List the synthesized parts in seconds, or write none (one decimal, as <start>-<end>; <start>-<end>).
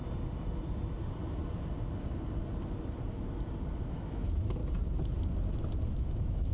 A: 3.9-4.6; 5.9-6.5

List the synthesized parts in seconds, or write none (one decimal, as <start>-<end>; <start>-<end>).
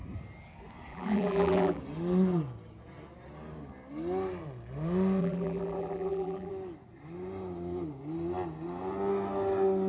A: 0.9-1.8; 5.2-6.5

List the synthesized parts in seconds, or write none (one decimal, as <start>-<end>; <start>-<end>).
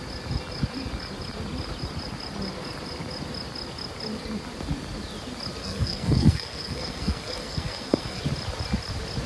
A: 5.6-8.2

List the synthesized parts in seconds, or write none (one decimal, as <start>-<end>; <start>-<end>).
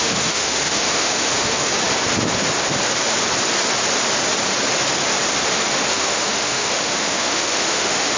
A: 0.0-1.7; 5.9-8.2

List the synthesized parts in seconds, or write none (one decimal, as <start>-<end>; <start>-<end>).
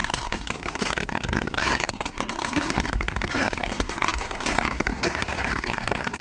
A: 0.0-6.2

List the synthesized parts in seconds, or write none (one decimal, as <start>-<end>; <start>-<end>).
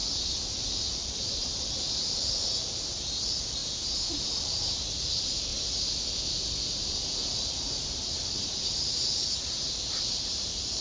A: 0.0-3.6; 4.2-5.5; 7.3-10.8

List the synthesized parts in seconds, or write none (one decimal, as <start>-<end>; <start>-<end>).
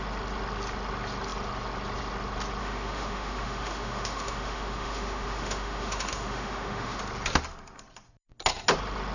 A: 2.6-7.0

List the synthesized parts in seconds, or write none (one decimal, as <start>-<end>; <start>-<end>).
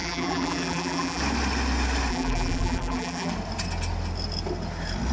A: 0.0-1.2; 2.1-3.3